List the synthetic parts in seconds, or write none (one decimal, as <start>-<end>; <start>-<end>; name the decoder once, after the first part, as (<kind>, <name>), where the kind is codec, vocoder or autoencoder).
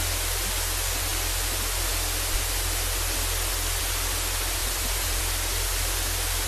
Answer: 4.6-5.2 (vocoder, BigVGAN v2)